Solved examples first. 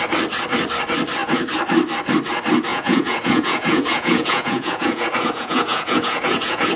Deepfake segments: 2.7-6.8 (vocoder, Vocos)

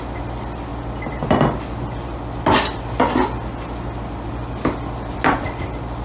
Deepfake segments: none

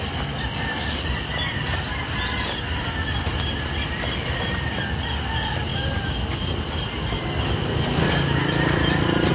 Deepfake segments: none

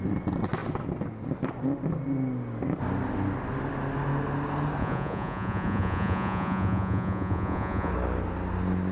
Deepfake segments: 4.8-7.9 (vocoder, Vocos)

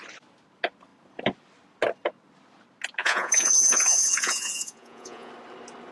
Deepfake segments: 3.0-5.3 (vocoder, Vocos)

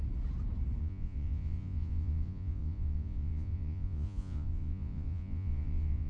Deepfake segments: 0.8-6.1 (vocoder, Vocos)

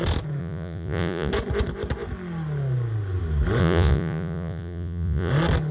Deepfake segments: 0.4-1.3 (vocoder, Vocos); 3.6-5.3